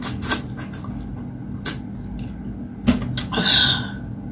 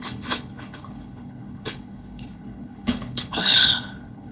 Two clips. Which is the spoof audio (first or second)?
second